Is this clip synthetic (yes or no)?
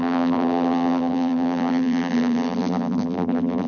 yes